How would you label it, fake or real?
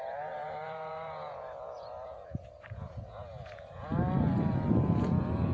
fake